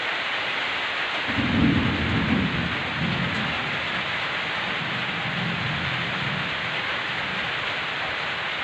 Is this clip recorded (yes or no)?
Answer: yes